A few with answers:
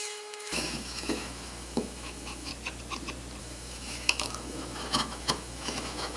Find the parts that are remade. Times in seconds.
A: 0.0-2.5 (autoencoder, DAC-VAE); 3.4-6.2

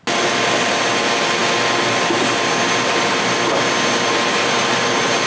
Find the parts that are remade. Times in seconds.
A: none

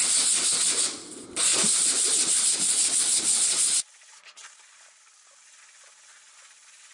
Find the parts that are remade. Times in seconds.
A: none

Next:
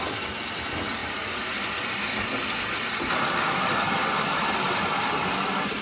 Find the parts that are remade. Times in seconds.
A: 0.0-5.8 (vocoder, BigVGAN v2)